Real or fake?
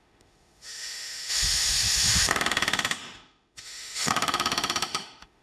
fake